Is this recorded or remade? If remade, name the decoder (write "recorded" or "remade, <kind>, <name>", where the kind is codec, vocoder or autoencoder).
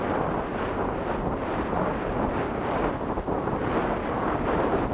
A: recorded